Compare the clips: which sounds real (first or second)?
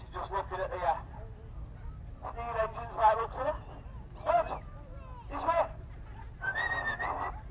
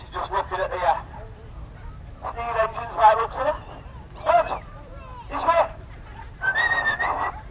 first